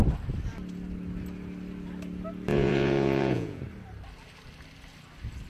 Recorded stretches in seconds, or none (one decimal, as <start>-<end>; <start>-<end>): 0.0-2.5; 3.6-5.5

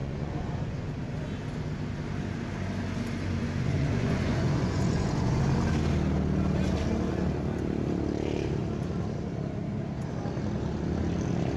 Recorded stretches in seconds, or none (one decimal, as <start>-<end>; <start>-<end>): 0.9-3.4; 5.4-11.6

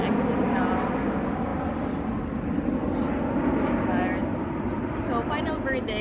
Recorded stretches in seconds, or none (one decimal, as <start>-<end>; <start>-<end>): 0.0-6.0

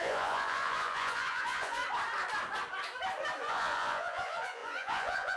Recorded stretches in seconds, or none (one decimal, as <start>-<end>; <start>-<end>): 1.8-3.4

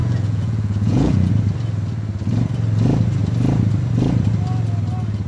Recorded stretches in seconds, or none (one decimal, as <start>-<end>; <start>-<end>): 1.3-5.3

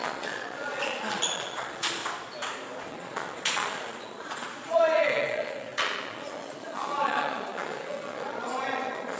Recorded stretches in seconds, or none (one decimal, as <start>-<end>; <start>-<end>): 2.0-2.9